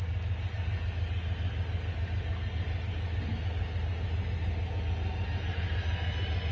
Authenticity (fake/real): real